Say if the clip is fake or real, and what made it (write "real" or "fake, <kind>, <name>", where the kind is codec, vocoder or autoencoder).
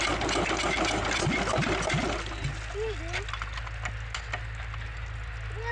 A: real